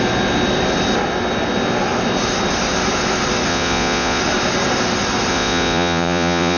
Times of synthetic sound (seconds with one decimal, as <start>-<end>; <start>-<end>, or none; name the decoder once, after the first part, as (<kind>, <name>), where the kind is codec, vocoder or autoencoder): 3.5-4.2 (vocoder, Vocos); 5.3-6.6